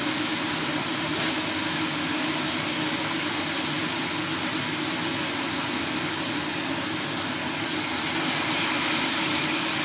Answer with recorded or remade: recorded